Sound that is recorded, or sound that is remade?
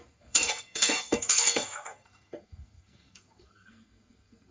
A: remade